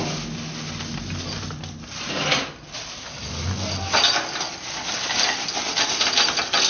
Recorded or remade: recorded